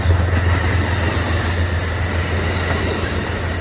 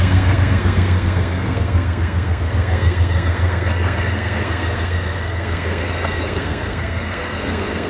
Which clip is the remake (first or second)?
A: second